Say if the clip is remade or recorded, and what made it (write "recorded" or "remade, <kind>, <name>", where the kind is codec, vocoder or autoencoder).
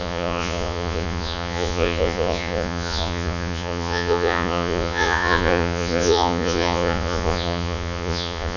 remade, vocoder, Vocos